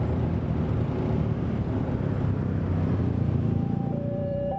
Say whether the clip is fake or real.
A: fake